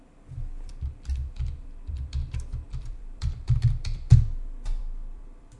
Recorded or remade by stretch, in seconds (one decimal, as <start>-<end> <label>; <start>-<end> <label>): 0.0-0.7 recorded; 0.7-4.1 remade; 4.1-4.8 recorded; 4.8-5.6 remade